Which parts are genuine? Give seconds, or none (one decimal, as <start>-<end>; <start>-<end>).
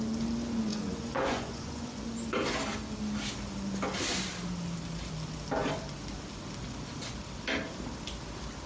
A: 0.0-0.7; 2.0-8.7